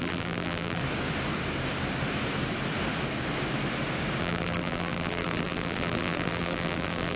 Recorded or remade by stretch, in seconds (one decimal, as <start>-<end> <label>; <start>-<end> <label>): 0.0-0.8 remade; 0.8-4.2 recorded; 4.2-7.2 remade